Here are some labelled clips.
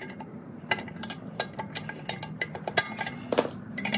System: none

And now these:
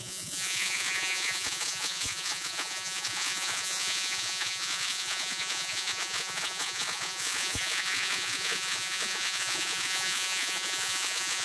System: vocoder, Vocos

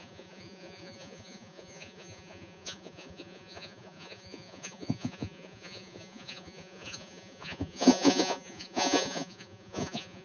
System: vocoder, Vocos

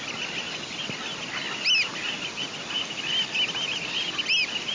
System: none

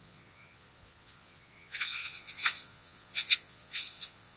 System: vocoder, Vocos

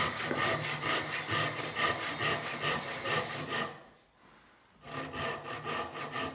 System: none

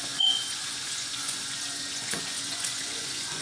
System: vocoder, Vocos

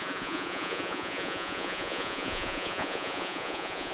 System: vocoder, Vocos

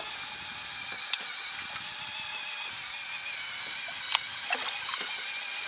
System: none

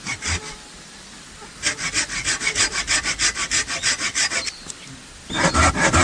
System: none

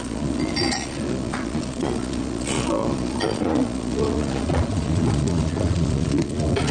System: vocoder, Vocos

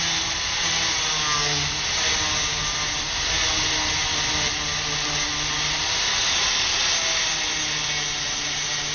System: none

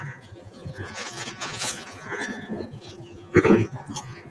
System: vocoder, Vocos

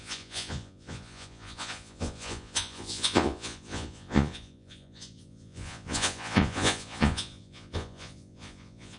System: vocoder, Vocos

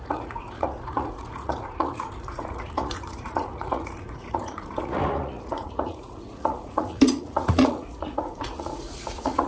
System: vocoder, Vocos